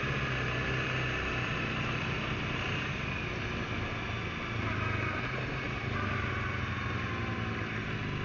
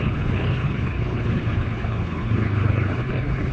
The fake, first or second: second